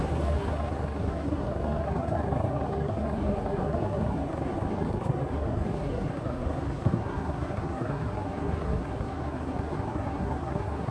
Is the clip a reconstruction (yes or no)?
yes